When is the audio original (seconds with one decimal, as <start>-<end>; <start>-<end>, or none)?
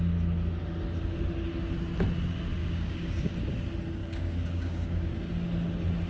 0.0-2.6; 3.3-4.0; 5.1-6.1